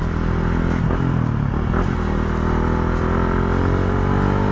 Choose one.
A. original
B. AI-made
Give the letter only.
A